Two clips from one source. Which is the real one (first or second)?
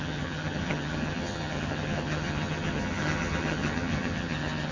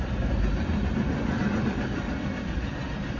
second